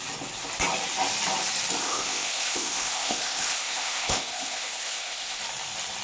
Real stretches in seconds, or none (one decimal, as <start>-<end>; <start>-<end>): 0.0-1.8; 5.4-6.0